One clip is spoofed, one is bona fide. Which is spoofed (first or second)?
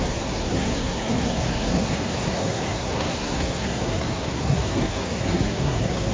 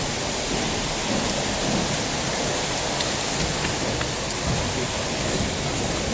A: first